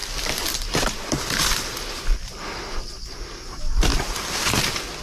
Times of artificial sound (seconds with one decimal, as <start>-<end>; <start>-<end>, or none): none